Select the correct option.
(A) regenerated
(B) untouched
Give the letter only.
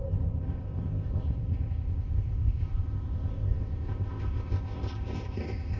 A